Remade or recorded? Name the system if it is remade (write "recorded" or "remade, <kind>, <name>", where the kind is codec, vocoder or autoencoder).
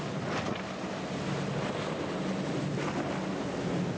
recorded